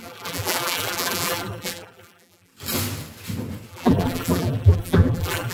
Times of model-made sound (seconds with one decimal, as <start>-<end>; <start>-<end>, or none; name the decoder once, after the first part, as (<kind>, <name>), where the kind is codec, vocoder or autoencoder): 0.0-2.5 (vocoder, BigVGAN v2); 3.7-5.5